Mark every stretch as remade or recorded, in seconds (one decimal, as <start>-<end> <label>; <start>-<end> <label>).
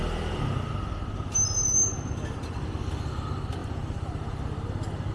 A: 0.0-5.1 recorded